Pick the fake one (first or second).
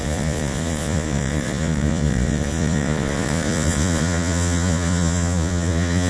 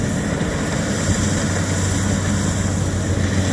first